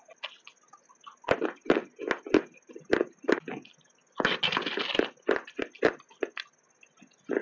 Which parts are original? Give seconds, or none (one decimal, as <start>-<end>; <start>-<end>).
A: 0.0-7.4